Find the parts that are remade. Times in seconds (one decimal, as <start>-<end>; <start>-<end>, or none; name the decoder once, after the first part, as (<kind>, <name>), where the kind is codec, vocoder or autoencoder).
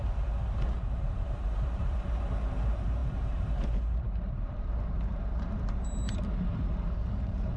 0.0-7.6 (vocoder, BigVGAN v2)